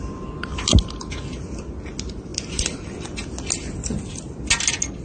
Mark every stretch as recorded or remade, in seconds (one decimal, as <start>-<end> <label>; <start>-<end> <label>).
0.0-5.0 recorded